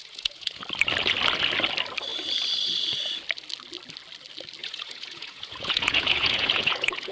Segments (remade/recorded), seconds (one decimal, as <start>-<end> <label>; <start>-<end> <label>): 0.0-0.6 remade; 0.6-4.6 recorded; 4.6-7.1 remade